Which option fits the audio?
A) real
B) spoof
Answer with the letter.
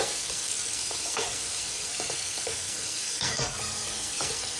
B